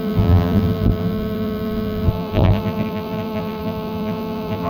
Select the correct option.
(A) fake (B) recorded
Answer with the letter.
A